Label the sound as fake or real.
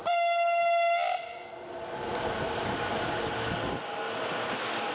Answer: real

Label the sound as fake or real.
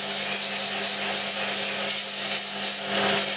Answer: real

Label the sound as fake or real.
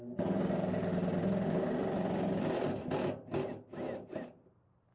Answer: real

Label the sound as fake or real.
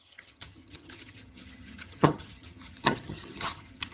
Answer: fake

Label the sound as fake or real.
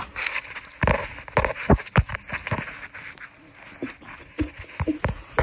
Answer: real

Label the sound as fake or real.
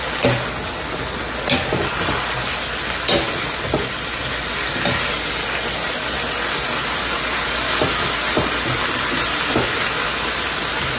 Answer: real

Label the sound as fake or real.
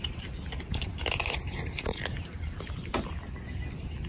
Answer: real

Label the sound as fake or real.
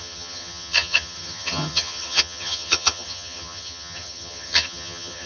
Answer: fake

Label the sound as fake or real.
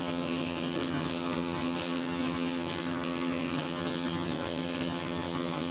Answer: fake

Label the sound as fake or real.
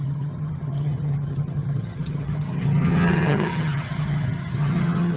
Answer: fake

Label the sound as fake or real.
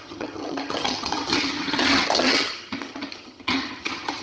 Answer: fake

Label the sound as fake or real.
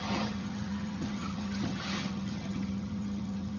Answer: fake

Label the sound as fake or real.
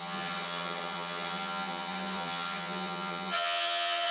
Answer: fake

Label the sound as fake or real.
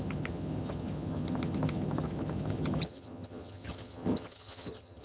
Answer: fake